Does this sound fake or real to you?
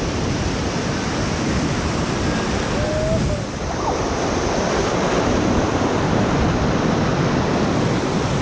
real